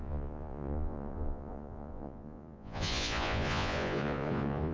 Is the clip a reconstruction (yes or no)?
yes